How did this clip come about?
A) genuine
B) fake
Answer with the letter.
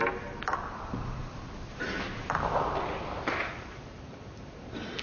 A